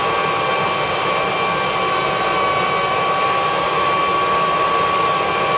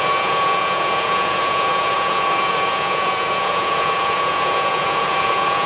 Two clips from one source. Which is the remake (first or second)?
second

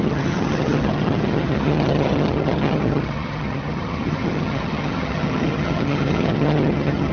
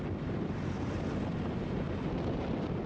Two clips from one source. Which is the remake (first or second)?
first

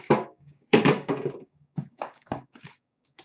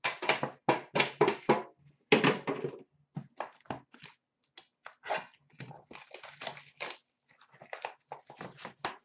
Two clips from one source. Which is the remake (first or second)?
first